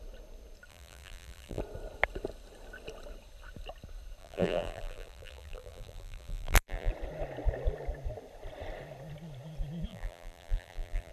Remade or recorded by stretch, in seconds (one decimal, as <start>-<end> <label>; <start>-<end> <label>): 0.0-0.7 recorded; 0.7-1.6 remade; 1.6-4.2 recorded; 4.2-6.9 remade; 6.9-9.9 recorded; 9.9-11.1 remade